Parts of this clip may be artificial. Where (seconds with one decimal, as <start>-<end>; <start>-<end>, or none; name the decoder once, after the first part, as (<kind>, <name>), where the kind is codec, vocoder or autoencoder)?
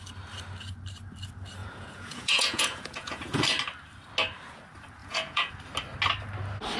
1.6-3.4 (vocoder, Vocos); 5.0-5.5